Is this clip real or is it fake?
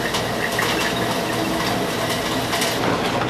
real